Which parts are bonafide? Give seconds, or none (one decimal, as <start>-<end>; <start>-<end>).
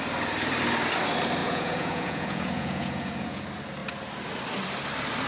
0.0-1.4; 3.4-5.3